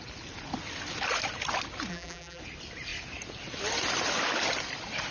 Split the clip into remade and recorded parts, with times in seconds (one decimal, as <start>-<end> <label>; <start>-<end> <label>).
0.0-1.9 recorded; 1.9-2.4 remade; 2.4-5.1 recorded